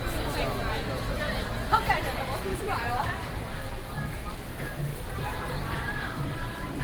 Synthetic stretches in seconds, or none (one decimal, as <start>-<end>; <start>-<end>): 2.5-3.1; 4.9-6.8